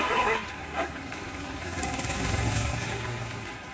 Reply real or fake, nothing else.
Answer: fake